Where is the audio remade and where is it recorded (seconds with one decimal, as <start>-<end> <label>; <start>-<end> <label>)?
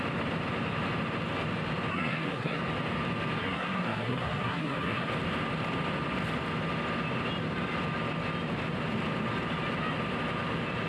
0.0-1.9 recorded; 1.9-2.6 remade; 2.6-3.4 recorded; 3.4-5.1 remade; 5.1-10.9 recorded